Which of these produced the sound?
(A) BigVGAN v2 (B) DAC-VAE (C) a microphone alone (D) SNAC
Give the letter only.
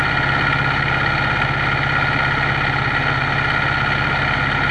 C